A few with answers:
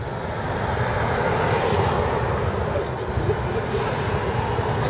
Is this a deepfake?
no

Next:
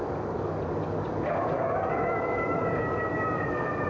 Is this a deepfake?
yes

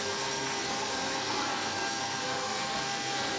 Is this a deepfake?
yes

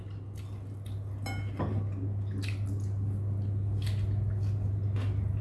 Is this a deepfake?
no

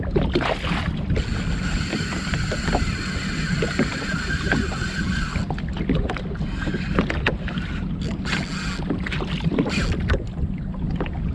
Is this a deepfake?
no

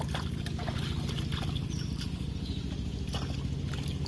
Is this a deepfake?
no